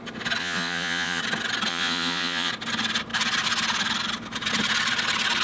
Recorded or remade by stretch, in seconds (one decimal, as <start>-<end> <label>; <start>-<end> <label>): 0.0-0.4 recorded; 0.4-1.2 remade; 1.2-1.7 recorded; 1.7-2.5 remade; 2.5-5.4 recorded